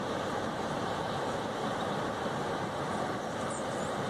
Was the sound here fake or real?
fake